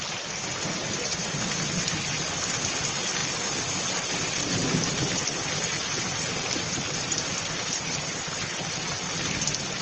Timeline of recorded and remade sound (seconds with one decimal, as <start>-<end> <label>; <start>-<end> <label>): 0.0-9.8 recorded